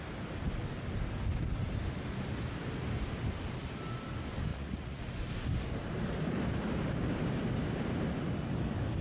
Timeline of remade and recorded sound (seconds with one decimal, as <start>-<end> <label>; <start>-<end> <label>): 0.0-4.5 recorded; 4.5-5.0 remade; 5.0-9.0 recorded

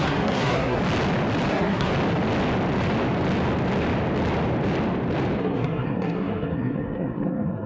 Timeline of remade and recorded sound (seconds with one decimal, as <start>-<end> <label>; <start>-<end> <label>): 0.0-0.8 remade; 0.8-1.5 recorded; 1.5-1.9 remade; 1.9-5.4 recorded; 5.4-7.7 remade

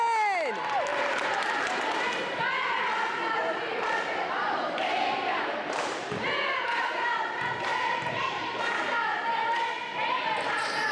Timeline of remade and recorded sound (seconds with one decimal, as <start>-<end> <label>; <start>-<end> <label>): 0.0-0.9 recorded; 0.9-1.8 remade; 1.8-4.4 recorded; 4.4-6.8 remade; 6.8-7.7 recorded; 7.7-8.6 remade; 8.6-10.9 recorded

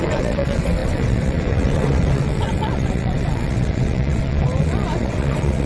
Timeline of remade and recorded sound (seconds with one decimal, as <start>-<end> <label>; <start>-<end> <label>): 0.0-5.7 remade

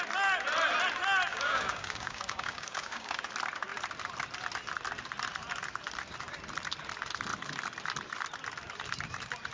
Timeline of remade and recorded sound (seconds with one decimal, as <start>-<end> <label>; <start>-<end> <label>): 0.0-1.3 recorded; 1.3-3.3 remade; 3.3-9.5 recorded

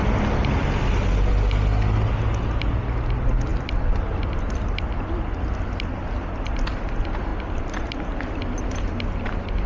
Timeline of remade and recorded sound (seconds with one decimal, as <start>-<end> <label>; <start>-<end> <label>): 0.0-9.7 recorded

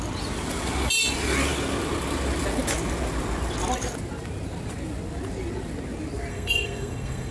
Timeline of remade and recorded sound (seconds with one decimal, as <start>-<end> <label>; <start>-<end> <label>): 0.0-6.3 recorded; 6.3-7.3 remade

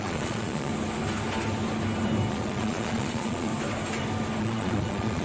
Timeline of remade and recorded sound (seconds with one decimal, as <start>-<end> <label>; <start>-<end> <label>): 0.0-0.7 remade; 0.7-2.3 recorded; 2.3-3.5 remade; 3.5-4.4 recorded; 4.4-5.2 remade